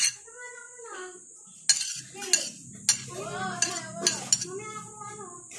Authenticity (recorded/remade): recorded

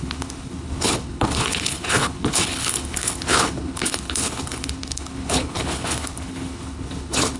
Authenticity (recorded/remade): remade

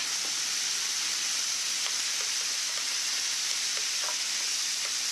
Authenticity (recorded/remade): recorded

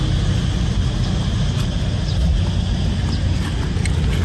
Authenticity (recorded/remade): recorded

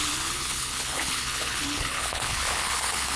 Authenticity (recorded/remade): remade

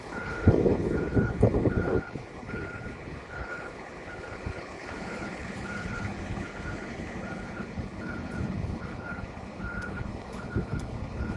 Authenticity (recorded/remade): remade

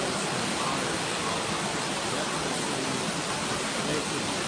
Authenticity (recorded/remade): recorded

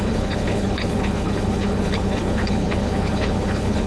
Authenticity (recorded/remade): remade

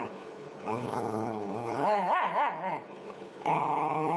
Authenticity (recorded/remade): remade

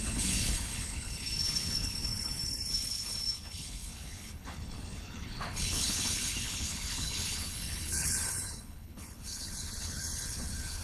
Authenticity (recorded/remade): remade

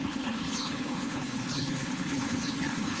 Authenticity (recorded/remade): remade